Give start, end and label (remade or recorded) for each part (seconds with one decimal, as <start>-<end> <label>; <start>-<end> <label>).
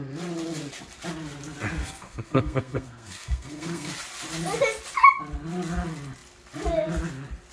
0.0-1.8 recorded; 1.8-3.9 remade; 3.9-7.5 recorded